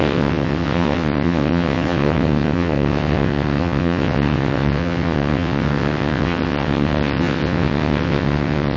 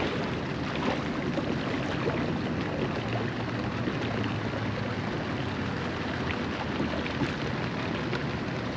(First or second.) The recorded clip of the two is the second